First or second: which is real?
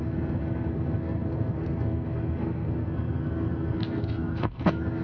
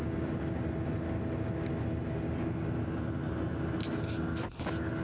second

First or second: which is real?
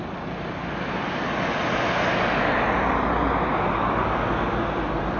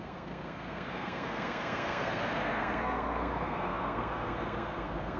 first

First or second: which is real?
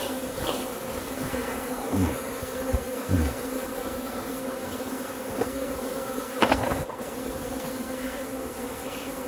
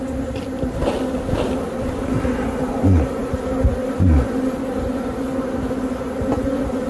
second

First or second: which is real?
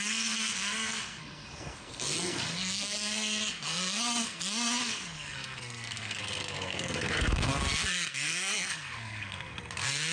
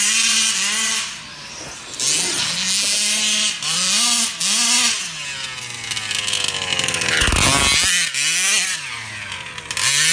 second